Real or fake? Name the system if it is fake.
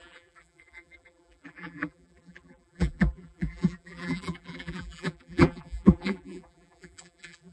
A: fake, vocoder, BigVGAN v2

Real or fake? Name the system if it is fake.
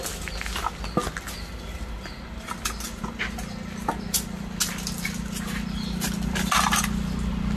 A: real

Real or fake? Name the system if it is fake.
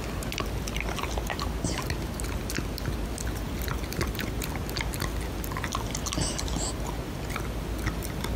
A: real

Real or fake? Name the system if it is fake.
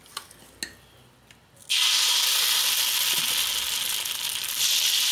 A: real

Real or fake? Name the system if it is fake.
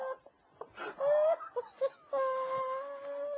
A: real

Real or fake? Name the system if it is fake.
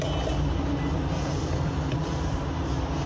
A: real